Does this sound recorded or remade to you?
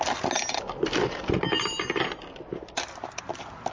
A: recorded